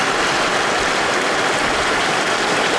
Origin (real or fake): real